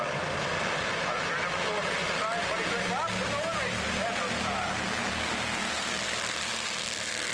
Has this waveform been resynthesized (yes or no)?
no